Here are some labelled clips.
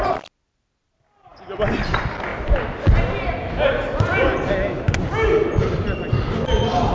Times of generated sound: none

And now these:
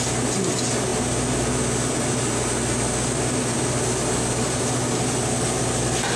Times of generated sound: none

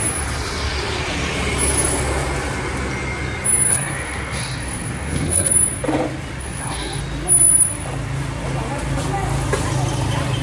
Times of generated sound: 3.7-5.5 (codec, SNAC); 6.4-7.0

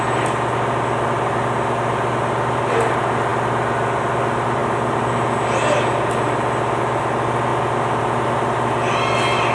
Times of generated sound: none

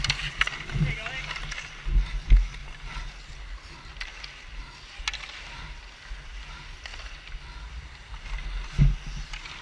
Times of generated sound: none